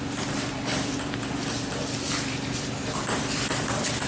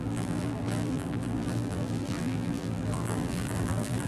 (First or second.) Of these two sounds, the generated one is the second